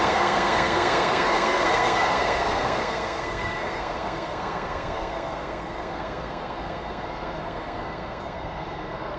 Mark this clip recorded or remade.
remade